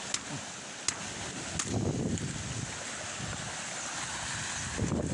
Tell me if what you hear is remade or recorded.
recorded